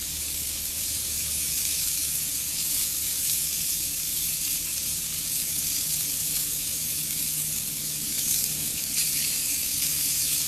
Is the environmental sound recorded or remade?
remade